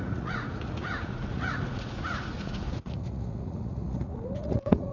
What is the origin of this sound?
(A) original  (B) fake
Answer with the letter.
B